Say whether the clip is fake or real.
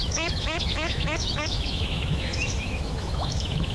fake